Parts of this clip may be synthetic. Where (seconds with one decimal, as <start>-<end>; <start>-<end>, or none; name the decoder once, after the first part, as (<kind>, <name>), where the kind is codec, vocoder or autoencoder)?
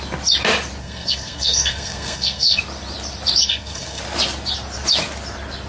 0.8-2.6 (codec, SNAC); 3.4-4.0